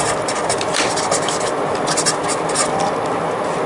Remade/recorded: recorded